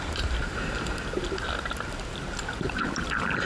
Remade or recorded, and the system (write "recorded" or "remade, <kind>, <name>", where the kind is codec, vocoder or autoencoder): remade, vocoder, BigVGAN v2